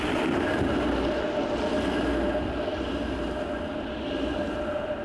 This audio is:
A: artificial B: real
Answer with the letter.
B